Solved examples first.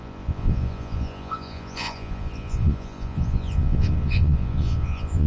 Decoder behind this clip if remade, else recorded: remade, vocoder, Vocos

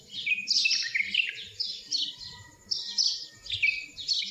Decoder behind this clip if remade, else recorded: recorded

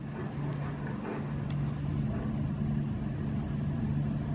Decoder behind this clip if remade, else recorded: recorded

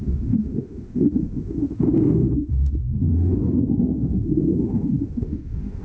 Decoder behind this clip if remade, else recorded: remade, autoencoder, DAC-VAE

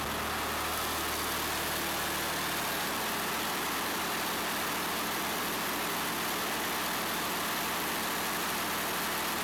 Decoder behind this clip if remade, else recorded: recorded